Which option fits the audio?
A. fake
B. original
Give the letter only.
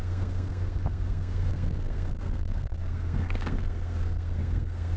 A